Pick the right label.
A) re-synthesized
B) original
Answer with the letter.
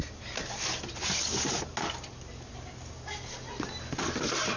B